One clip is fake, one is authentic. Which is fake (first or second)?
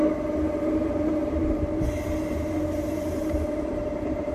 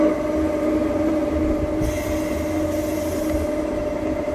first